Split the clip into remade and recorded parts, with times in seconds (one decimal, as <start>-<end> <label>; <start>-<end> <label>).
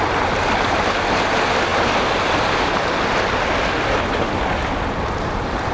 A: 0.0-5.7 recorded